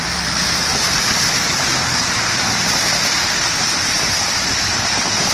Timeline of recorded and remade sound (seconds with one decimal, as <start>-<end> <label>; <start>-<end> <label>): 0.0-5.3 remade